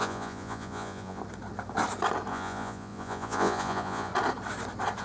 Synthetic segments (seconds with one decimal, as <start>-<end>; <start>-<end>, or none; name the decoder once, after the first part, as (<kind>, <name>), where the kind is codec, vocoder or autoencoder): 0.0-1.2 (vocoder, Vocos); 2.3-4.1